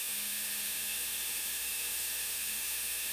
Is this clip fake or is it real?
fake